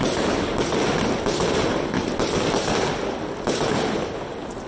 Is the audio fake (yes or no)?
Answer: no